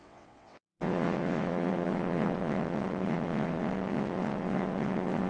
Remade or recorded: remade